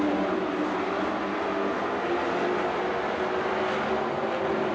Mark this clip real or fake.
real